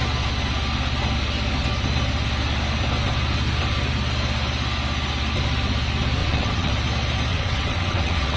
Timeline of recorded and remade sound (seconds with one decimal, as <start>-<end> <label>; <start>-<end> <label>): 0.0-6.2 recorded; 6.2-6.7 remade; 6.7-7.3 recorded; 7.3-8.4 remade